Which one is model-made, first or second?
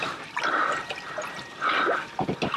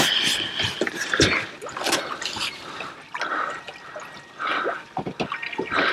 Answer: first